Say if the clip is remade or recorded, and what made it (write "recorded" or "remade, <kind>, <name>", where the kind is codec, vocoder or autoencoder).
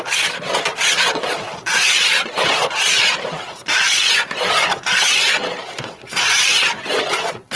remade, vocoder, Vocos